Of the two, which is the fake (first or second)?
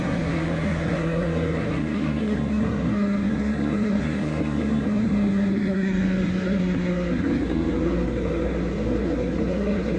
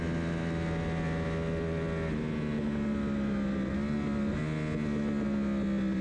first